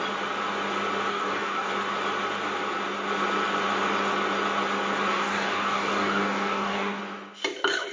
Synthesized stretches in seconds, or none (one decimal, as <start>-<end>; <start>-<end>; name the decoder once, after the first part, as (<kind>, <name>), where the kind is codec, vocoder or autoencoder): 1.1-1.7 (codec, DAC); 5.1-7.0

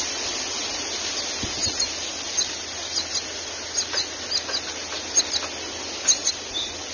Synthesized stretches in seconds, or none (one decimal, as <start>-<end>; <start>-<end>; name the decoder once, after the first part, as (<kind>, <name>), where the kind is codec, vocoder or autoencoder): none

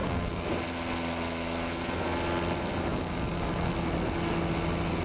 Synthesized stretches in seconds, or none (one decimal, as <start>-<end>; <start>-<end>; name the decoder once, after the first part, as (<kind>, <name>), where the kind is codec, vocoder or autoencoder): 0.0-0.5 (codec, DAC); 2.9-3.7

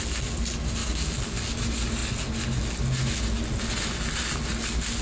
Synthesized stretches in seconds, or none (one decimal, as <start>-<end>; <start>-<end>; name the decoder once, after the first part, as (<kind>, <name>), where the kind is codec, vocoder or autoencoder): 0.8-1.4 (codec, DAC)

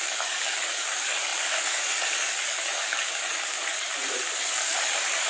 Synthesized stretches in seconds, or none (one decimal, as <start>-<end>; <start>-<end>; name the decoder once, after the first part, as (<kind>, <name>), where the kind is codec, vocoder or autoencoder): 0.0-3.9 (codec, DAC); 4.4-5.3